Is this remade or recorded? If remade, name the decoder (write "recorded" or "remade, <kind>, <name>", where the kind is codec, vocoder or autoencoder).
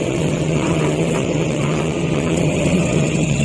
remade, vocoder, WaveNeXt